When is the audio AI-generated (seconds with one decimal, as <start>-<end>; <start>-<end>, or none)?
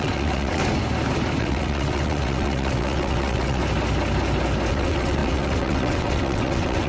0.0-0.6; 1.4-3.6; 4.7-6.9